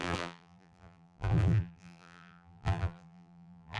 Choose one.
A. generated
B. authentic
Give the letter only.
A